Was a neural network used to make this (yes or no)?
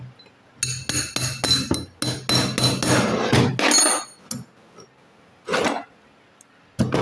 no